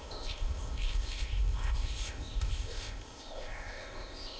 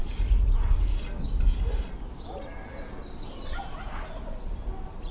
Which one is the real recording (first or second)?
second